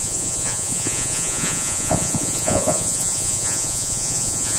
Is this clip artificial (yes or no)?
yes